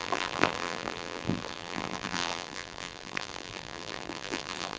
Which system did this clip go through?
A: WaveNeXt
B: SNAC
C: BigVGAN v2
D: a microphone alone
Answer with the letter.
C